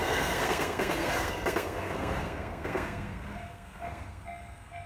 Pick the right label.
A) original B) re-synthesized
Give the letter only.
B